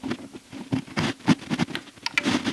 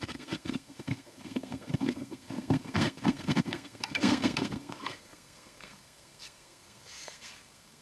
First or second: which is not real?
second